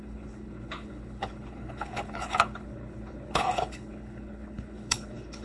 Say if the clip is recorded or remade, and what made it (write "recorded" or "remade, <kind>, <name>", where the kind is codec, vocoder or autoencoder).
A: remade, codec, HILCodec